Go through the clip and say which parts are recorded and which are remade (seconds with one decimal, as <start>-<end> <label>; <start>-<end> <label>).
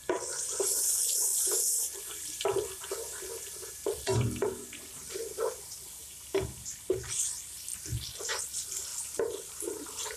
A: 0.0-7.7 remade; 7.7-8.4 recorded; 8.4-10.2 remade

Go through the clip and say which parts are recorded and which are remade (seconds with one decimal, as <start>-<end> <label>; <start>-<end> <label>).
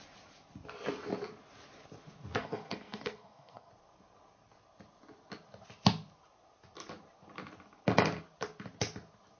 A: 0.0-2.4 recorded; 2.4-3.7 remade; 3.7-9.4 recorded